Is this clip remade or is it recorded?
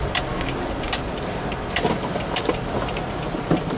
recorded